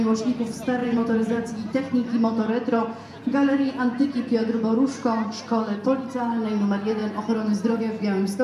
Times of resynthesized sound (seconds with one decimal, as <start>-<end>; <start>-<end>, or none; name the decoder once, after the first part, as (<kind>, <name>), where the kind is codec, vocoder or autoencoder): 0.8-1.8 (vocoder, Vocos); 2.7-4.1